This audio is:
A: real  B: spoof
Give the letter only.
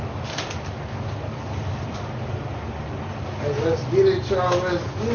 A